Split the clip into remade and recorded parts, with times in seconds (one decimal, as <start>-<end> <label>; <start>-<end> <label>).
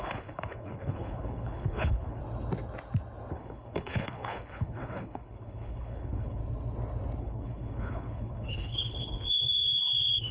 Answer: 0.0-2.2 remade; 2.2-3.3 recorded; 3.3-6.4 remade; 6.4-7.2 recorded; 7.2-10.3 remade